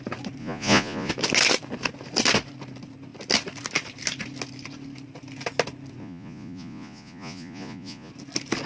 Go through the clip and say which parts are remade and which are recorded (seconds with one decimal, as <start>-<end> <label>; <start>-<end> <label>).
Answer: 0.0-0.4 recorded; 0.4-1.1 remade; 1.1-6.0 recorded; 6.0-8.1 remade; 8.1-8.7 recorded